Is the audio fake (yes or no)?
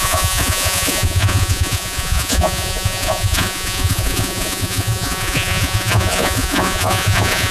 yes